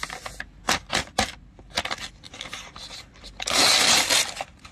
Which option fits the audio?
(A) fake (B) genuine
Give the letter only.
B